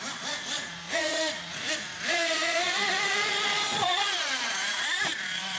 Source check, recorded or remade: remade